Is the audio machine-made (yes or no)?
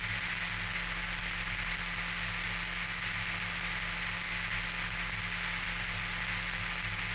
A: no